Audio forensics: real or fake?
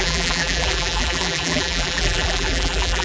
fake